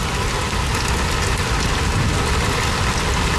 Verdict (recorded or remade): recorded